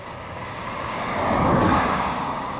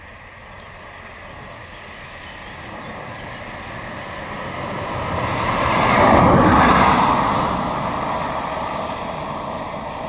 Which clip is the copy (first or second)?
first